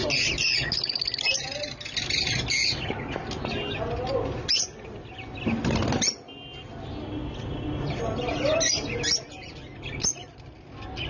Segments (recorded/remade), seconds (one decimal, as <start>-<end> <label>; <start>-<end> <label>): 0.0-11.1 recorded